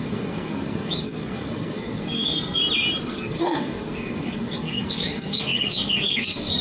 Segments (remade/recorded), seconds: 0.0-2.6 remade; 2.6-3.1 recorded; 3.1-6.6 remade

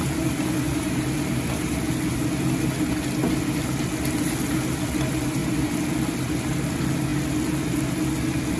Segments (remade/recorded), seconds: 0.0-8.6 recorded

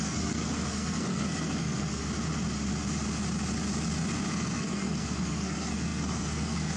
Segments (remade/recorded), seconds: 0.0-2.0 remade; 2.0-4.3 recorded; 4.3-6.8 remade

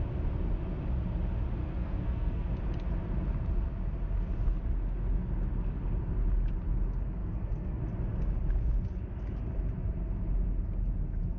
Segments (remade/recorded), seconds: 0.0-1.6 recorded; 1.6-2.5 remade; 2.5-7.2 recorded; 7.2-7.8 remade; 7.8-11.4 recorded

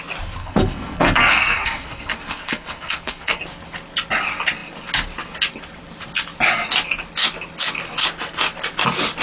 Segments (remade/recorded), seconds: 0.0-0.4 recorded; 0.4-3.4 remade; 3.4-9.2 recorded

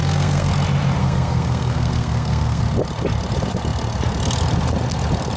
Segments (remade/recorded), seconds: 0.0-0.5 remade; 0.5-1.0 recorded; 1.0-2.6 remade; 2.6-5.4 recorded

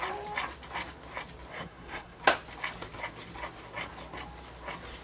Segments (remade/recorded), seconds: 0.0-1.5 recorded; 1.5-2.2 remade; 2.2-5.0 recorded